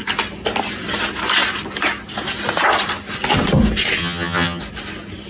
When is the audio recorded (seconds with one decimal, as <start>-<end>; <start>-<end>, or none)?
0.0-4.0; 4.6-5.3